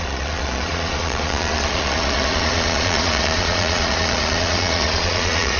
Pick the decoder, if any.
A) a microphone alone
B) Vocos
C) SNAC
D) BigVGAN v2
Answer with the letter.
B